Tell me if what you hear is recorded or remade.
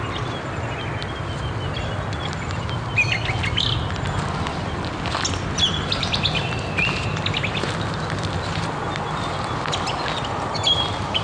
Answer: recorded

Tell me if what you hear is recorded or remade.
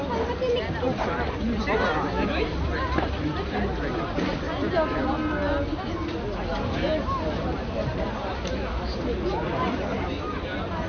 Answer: recorded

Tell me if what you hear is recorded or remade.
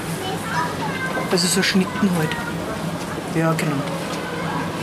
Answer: recorded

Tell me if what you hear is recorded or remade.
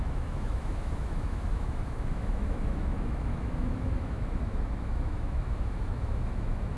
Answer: remade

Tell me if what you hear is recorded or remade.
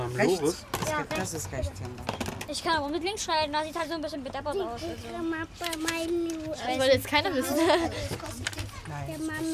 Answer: recorded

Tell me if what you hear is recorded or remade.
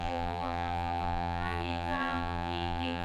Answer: remade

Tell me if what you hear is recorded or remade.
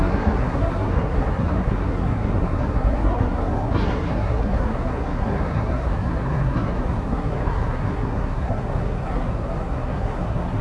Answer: remade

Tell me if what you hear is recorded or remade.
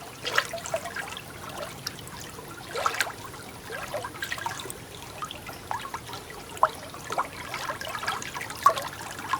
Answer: recorded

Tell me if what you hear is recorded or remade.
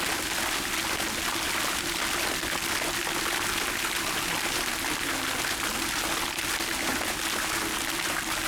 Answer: recorded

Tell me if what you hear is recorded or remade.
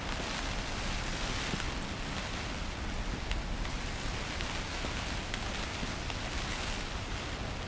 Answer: recorded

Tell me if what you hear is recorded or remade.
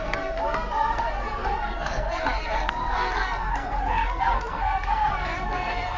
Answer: remade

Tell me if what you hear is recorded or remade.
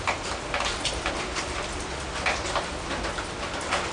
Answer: recorded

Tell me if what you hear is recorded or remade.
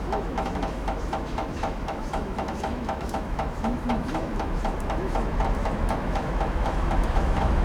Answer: remade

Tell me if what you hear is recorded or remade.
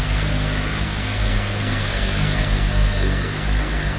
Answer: remade